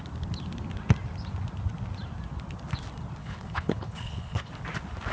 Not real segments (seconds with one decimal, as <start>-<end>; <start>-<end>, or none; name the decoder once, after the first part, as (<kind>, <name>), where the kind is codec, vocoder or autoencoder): 3.2-4.5 (codec, HILCodec)